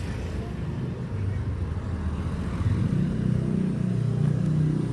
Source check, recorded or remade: recorded